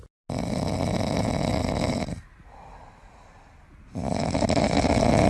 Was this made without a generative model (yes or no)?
yes